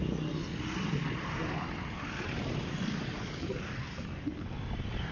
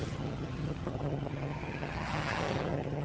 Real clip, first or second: first